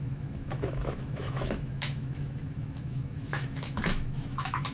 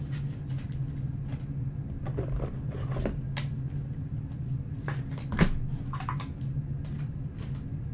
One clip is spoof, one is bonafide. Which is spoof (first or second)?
first